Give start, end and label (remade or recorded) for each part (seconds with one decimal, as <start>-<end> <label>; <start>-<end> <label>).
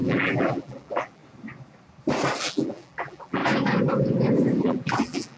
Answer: 0.0-1.2 remade; 1.2-2.4 recorded; 2.4-3.4 remade; 3.4-4.6 recorded; 4.6-5.4 remade